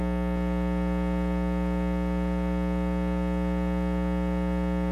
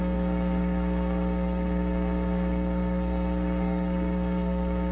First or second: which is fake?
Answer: second